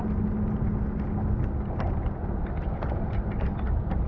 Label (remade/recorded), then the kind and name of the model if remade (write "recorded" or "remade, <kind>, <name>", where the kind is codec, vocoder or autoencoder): recorded